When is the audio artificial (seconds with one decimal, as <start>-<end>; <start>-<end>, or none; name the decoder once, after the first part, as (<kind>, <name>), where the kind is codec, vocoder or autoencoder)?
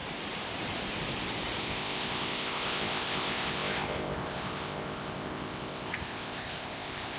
1.6-7.2 (codec, ZipCodec)